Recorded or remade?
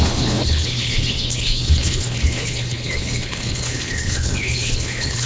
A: remade